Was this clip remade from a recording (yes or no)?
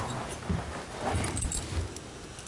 no